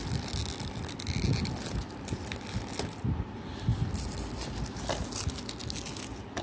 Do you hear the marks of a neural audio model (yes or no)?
no